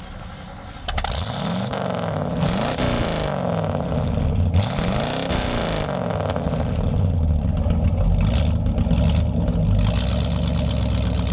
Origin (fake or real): real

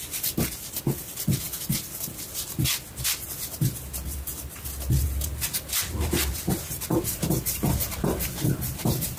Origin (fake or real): real